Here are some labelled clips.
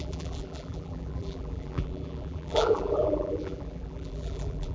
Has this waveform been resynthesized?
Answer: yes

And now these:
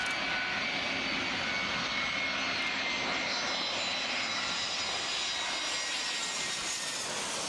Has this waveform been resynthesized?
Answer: no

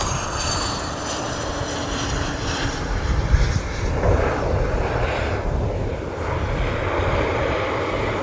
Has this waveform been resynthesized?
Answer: yes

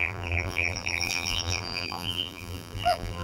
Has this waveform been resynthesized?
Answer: yes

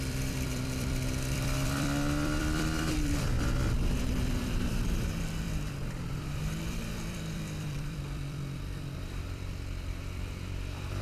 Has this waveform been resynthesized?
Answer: yes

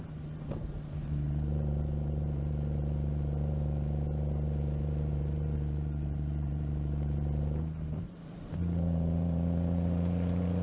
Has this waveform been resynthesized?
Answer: yes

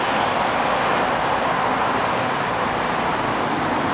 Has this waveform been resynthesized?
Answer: no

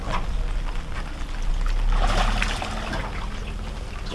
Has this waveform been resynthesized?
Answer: no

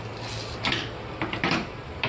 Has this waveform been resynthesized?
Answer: no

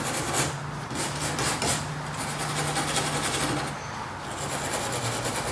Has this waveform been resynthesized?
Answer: no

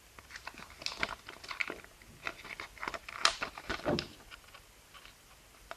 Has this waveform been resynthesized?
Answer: no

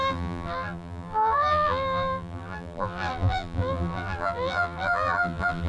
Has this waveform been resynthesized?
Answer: yes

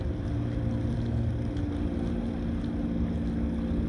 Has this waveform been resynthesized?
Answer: no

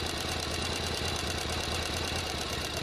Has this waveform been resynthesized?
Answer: yes